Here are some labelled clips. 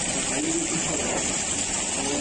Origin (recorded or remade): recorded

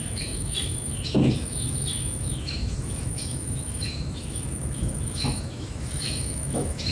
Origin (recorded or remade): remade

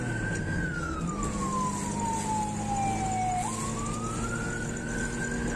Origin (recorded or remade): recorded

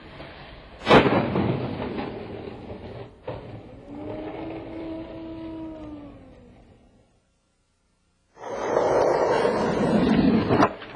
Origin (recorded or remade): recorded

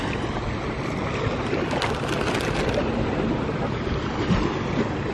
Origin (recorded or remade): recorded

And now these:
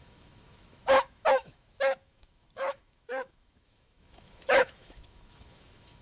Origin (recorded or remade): remade